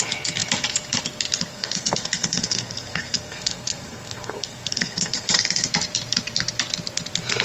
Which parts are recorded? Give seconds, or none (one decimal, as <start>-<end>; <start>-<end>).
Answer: 0.0-1.5; 5.7-7.4